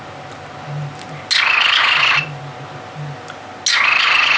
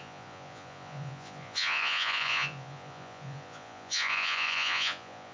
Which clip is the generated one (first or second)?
second